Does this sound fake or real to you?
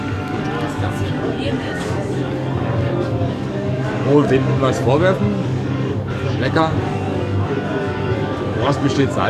fake